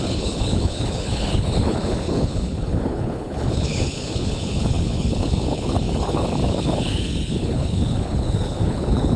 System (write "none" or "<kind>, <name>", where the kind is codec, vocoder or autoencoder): codec, HILCodec